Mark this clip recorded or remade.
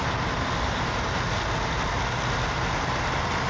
recorded